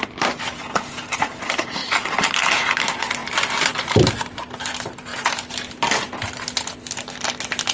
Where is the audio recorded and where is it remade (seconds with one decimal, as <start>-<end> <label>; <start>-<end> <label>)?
0.0-7.7 recorded